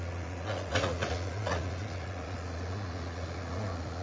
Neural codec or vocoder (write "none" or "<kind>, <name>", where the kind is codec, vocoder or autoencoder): vocoder, Vocos